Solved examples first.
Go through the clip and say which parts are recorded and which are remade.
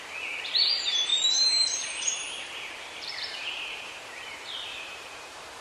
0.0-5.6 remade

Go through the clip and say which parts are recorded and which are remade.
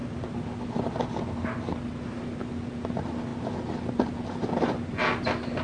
0.0-3.3 remade; 3.3-4.3 recorded; 4.3-5.6 remade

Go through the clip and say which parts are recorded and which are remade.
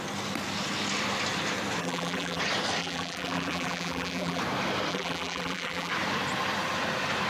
0.0-1.8 recorded; 1.8-2.4 remade; 2.4-2.8 recorded; 2.8-4.4 remade; 4.4-4.9 recorded; 4.9-5.9 remade; 5.9-7.3 recorded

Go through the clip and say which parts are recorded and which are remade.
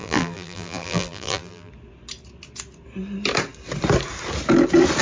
0.0-1.7 remade; 1.7-5.0 recorded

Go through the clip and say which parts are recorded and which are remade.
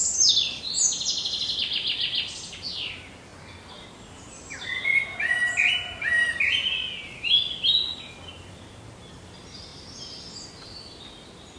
0.0-11.6 recorded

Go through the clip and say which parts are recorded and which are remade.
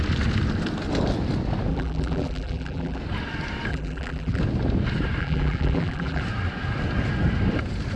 0.0-1.7 recorded; 1.7-3.0 remade; 3.0-3.7 recorded; 3.7-4.4 remade; 4.4-5.2 recorded; 5.2-6.2 remade; 6.2-8.0 recorded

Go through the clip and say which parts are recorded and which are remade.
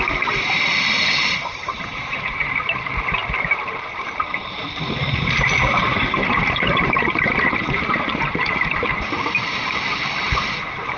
0.0-11.0 remade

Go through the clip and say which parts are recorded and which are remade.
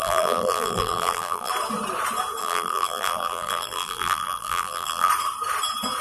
0.0-1.5 remade; 1.5-2.4 recorded; 2.4-5.1 remade; 5.1-6.0 recorded